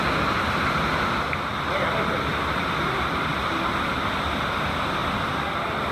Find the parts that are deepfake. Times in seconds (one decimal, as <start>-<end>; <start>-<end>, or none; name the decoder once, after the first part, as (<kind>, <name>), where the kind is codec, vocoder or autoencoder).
2.3-3.3 (vocoder, BigVGAN v2)